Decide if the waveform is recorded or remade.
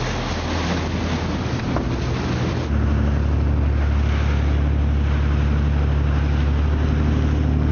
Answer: recorded